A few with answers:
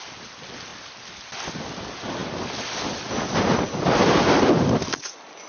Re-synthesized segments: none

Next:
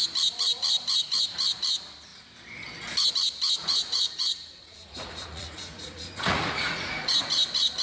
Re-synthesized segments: 3.6-7.1